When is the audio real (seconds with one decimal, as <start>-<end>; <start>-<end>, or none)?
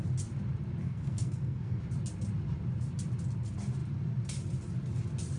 0.0-0.8; 1.8-5.4